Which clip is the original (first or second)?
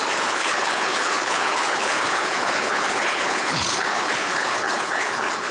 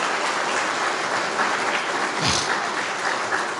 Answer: second